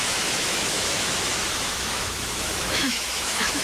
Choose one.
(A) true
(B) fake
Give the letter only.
B